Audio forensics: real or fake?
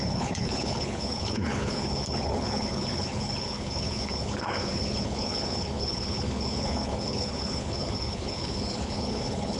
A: fake